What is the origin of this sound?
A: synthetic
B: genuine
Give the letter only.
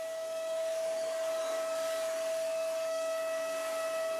A